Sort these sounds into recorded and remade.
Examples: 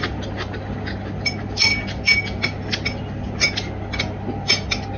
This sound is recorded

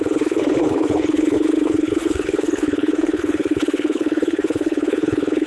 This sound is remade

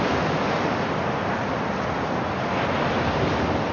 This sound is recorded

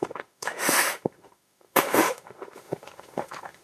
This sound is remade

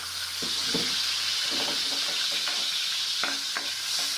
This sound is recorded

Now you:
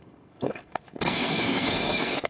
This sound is remade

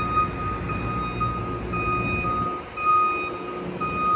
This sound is recorded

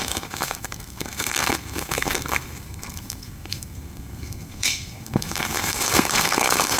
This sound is remade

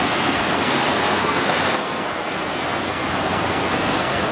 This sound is remade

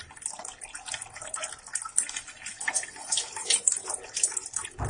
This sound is recorded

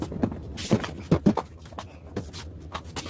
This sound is recorded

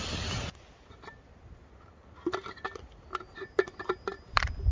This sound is recorded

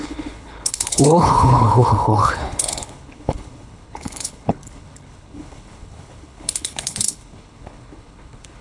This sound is remade